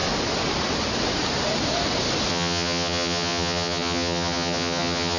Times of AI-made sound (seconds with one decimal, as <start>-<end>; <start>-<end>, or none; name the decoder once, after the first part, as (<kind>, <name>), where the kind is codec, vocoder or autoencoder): 2.3-5.2 (vocoder, HiFi-GAN)